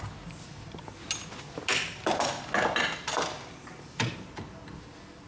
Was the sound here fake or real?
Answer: real